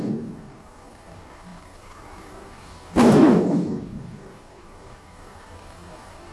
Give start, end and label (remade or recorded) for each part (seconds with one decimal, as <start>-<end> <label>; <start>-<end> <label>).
0.0-6.3 remade